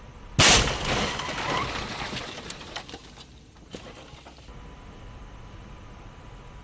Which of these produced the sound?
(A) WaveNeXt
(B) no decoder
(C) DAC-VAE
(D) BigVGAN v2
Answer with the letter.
B